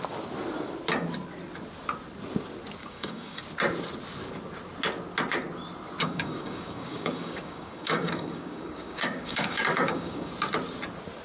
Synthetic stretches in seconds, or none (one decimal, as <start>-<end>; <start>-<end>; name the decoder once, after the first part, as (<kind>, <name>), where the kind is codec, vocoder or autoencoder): 2.8-3.4 (codec, DAC); 6.0-10.3